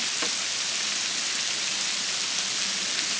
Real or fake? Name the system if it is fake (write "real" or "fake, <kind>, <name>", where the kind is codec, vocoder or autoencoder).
real